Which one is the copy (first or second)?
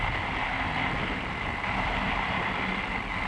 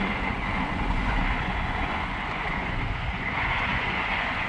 second